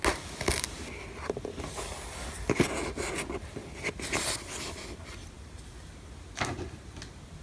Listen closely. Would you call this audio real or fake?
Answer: real